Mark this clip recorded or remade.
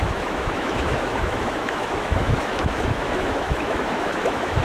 remade